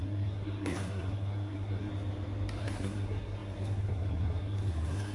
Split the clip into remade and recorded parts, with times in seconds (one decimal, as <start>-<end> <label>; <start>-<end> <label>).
0.0-1.9 remade; 1.9-2.6 recorded; 2.6-5.1 remade